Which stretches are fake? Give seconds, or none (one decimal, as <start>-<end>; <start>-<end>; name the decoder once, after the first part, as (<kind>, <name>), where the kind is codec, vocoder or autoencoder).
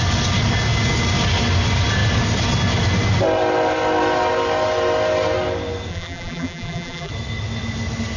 5.9-7.1 (vocoder, BigVGAN v2)